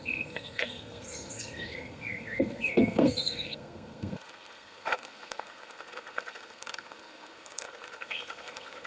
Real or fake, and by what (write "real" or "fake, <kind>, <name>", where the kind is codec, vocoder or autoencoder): fake, codec, SNAC